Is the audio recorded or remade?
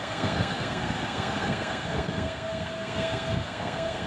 remade